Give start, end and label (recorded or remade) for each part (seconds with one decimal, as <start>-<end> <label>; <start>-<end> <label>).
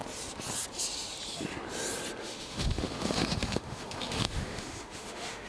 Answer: 0.0-2.2 recorded; 2.2-5.5 remade